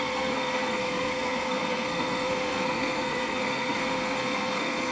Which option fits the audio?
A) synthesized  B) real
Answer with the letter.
A